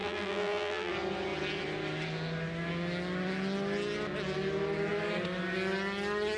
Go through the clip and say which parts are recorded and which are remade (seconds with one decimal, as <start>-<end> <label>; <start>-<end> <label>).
0.0-0.9 remade; 0.9-6.4 recorded